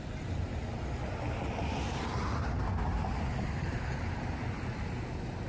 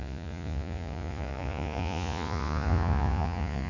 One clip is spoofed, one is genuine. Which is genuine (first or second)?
first